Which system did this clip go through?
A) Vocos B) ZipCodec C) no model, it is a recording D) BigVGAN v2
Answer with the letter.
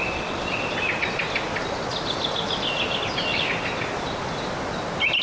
C